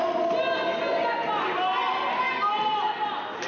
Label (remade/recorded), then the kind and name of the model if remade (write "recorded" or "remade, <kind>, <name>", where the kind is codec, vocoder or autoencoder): recorded